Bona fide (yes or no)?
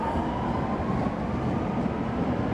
no